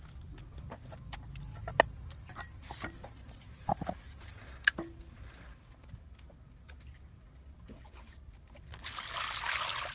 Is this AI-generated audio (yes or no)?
no